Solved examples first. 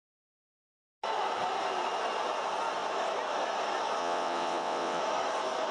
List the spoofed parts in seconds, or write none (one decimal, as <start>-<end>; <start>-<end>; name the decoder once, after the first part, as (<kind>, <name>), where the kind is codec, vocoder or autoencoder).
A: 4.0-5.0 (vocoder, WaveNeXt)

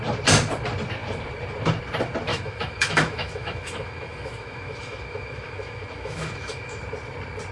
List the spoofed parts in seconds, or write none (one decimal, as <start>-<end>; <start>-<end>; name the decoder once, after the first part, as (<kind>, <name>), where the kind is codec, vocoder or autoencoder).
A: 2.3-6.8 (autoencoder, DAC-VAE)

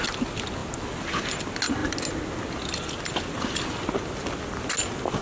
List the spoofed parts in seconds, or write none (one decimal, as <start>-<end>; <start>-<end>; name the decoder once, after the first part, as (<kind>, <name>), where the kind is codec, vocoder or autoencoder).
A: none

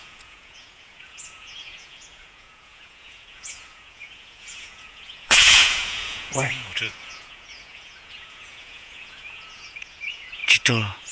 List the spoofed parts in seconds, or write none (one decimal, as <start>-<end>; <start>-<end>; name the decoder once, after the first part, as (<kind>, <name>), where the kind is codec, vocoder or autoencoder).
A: 0.0-11.1 (vocoder, Vocos)

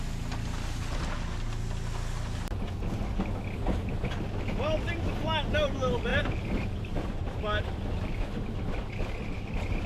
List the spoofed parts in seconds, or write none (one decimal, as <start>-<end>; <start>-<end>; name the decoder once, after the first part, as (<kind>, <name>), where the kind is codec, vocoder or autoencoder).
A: 6.1-7.4 (vocoder, BigVGAN v2)

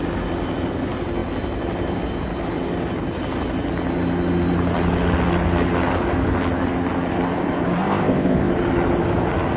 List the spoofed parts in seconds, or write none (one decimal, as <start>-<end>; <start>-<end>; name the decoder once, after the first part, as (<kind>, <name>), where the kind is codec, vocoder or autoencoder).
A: 7.8-8.5 (codec, ZipCodec)